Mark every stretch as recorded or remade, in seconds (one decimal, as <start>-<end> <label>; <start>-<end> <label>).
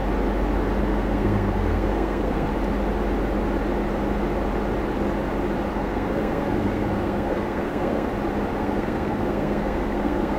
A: 0.0-0.8 recorded; 0.8-2.5 remade; 2.5-5.7 recorded; 5.7-8.1 remade; 8.1-8.6 recorded; 8.6-10.4 remade